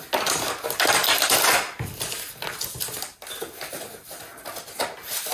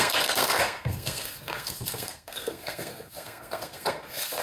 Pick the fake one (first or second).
second